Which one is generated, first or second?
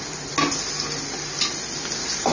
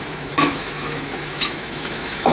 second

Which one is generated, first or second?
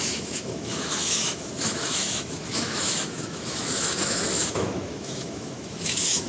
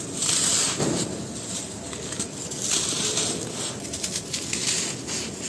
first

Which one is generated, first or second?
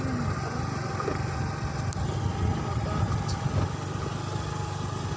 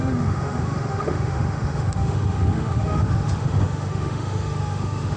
second